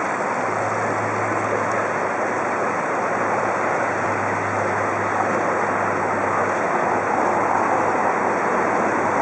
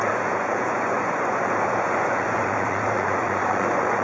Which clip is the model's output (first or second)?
second